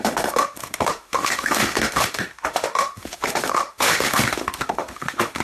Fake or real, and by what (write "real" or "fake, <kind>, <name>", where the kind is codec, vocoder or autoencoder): fake, autoencoder, DAC-VAE